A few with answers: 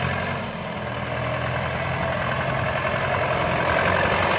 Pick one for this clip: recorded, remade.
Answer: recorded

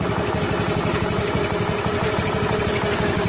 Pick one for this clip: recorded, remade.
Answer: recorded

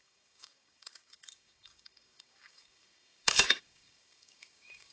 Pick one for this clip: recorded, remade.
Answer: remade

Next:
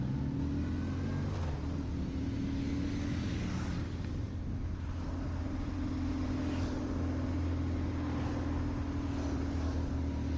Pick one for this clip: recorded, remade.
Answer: recorded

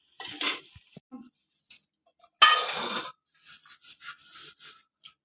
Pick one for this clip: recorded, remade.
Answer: recorded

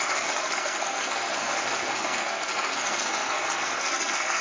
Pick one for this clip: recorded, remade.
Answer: remade